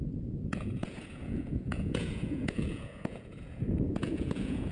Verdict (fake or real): fake